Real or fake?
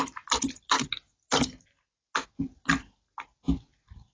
real